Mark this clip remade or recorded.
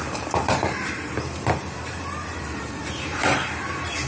remade